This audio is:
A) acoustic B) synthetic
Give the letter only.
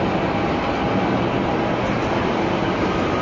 A